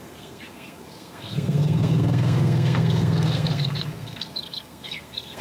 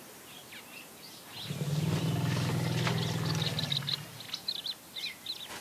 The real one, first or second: second